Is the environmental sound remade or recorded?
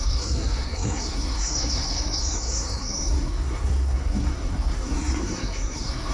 remade